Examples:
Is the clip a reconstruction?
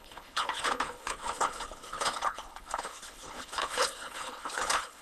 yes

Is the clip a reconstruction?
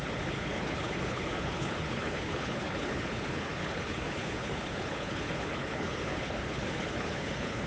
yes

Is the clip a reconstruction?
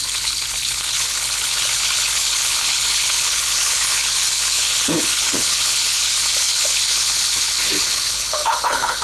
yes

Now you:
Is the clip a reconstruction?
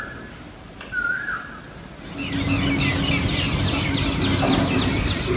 no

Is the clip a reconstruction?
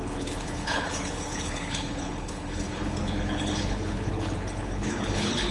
yes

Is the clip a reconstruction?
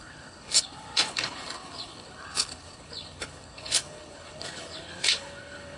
yes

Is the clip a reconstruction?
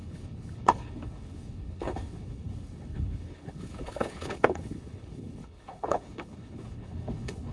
yes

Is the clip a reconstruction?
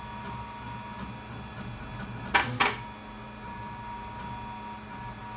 no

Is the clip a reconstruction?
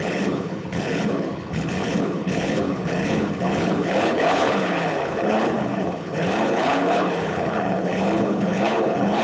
yes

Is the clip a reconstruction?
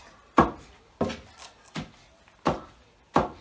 no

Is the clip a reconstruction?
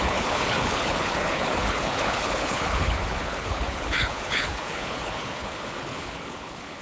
yes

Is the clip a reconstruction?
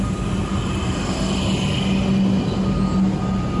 no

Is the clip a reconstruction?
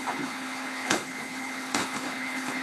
yes